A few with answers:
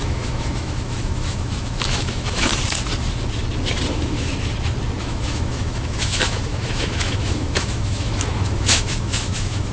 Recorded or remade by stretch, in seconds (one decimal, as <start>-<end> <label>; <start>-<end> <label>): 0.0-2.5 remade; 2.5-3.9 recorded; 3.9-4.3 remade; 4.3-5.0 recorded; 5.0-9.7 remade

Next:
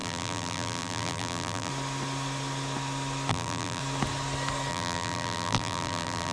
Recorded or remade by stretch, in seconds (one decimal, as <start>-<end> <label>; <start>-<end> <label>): 0.0-1.7 remade; 1.7-3.3 recorded; 3.3-3.8 remade; 3.8-4.7 recorded; 4.7-6.3 remade

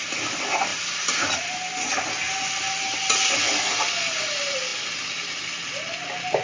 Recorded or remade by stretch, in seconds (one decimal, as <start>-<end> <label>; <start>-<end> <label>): 0.0-6.4 recorded

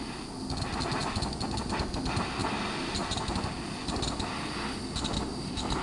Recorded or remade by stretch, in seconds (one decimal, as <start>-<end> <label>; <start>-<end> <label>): 0.0-2.4 recorded; 2.4-3.0 remade; 3.0-5.3 recorded; 5.3-5.8 remade

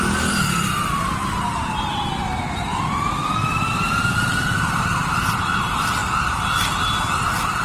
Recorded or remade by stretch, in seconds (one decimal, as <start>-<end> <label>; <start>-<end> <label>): 0.0-7.6 recorded